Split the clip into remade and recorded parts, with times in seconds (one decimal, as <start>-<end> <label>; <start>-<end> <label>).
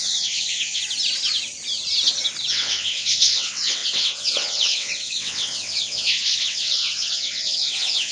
0.0-0.8 remade; 0.8-2.5 recorded; 2.5-8.1 remade